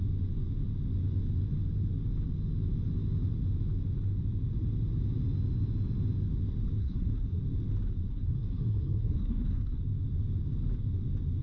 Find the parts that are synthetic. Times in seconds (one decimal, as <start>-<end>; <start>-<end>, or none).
6.8-7.4; 8.1-9.8